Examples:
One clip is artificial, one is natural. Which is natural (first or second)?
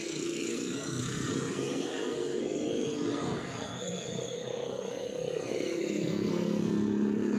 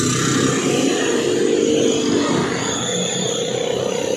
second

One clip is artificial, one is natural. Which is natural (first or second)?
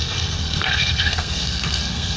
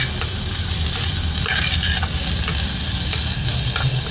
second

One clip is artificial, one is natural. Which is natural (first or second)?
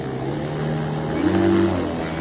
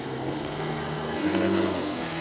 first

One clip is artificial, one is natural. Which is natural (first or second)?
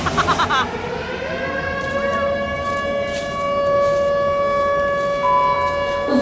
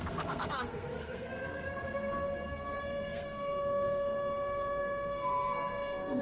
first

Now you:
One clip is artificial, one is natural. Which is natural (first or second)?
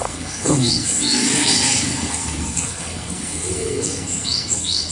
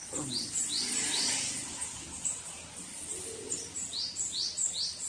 second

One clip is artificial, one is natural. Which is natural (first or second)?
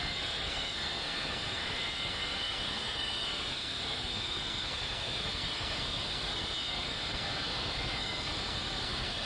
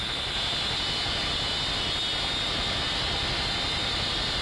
second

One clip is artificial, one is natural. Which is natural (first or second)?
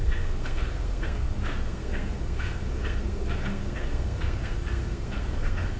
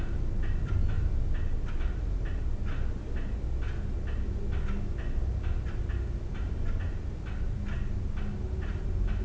second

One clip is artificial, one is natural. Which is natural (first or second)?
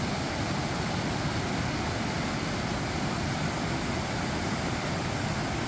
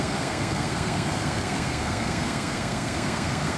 first